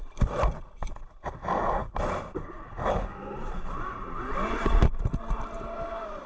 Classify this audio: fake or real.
real